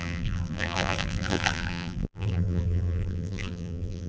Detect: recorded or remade remade